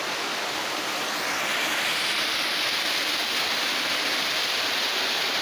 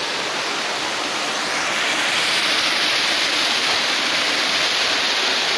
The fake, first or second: second